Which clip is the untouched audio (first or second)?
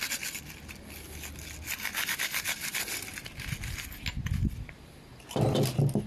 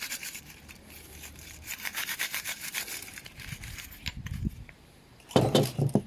first